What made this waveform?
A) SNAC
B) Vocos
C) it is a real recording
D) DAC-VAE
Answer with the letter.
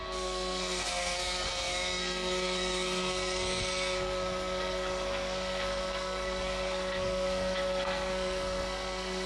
A